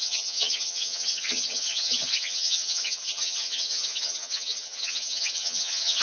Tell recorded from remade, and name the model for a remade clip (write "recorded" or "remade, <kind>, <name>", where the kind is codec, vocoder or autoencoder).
remade, vocoder, HiFi-GAN